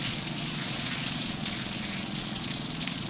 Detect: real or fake fake